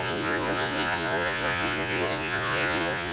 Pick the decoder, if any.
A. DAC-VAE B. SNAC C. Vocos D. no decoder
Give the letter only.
C